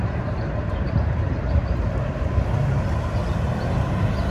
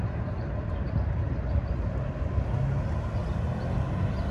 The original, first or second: second